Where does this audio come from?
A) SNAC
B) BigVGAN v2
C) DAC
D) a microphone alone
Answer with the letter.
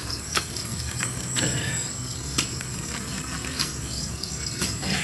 A